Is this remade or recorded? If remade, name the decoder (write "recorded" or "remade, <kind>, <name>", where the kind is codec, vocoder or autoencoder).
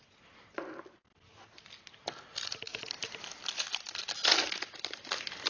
recorded